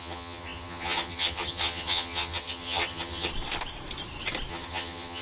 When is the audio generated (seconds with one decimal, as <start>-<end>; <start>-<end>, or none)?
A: 0.0-3.3; 4.5-5.2